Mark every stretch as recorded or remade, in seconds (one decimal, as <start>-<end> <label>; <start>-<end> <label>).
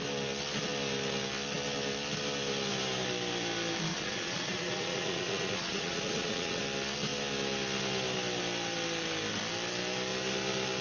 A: 0.0-3.9 recorded; 3.9-6.6 remade; 6.6-10.8 recorded